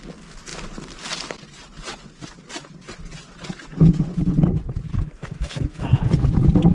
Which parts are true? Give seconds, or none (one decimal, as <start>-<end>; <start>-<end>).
0.0-4.9; 6.0-6.7